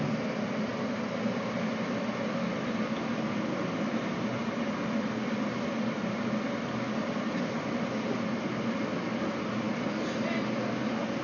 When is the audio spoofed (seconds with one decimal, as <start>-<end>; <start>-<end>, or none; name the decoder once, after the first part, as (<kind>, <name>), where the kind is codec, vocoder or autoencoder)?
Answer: none